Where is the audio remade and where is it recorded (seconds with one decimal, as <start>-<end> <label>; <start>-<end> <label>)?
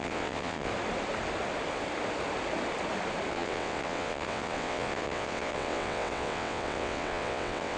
0.0-0.7 remade; 0.7-3.3 recorded; 3.3-7.8 remade